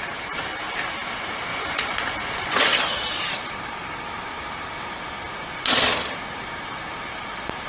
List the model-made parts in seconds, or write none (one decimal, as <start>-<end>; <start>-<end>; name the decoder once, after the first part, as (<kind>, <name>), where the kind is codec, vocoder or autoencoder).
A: 1.5-2.6 (vocoder, Vocos)